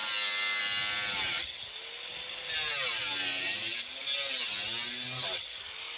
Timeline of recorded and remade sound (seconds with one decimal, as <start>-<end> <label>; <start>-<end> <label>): 0.0-6.0 recorded